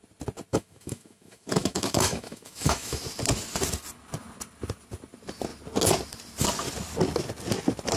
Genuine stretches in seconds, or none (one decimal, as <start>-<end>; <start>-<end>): 0.0-0.5; 3.0-8.0